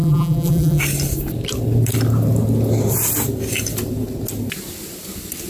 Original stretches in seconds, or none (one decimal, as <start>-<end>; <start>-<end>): 0.8-5.5

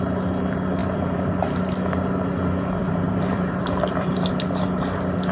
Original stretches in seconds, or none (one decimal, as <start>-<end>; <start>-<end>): 0.0-0.8; 1.6-2.8; 4.3-5.3

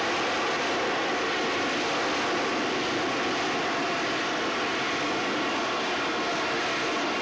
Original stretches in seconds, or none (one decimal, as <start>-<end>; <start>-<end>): 0.0-7.2

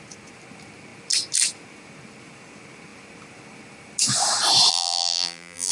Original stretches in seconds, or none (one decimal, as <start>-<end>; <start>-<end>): 0.0-4.7

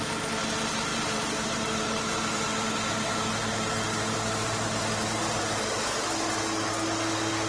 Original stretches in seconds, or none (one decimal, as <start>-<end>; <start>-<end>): 0.0-0.9; 5.4-7.5